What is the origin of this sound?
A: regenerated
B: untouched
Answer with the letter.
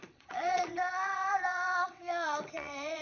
A